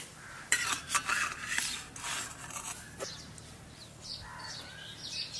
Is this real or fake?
real